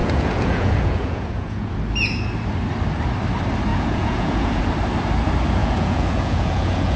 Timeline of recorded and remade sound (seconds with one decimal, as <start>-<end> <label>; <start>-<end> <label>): 0.0-1.7 remade; 1.7-3.7 recorded; 3.7-4.6 remade; 4.6-5.6 recorded; 5.6-7.0 remade